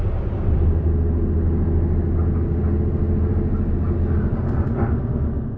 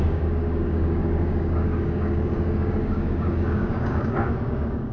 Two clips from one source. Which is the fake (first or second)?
second